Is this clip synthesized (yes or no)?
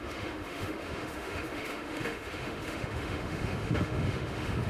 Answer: yes